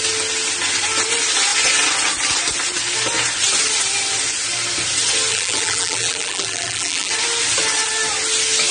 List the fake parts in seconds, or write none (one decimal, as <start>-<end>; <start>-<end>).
5.3-7.1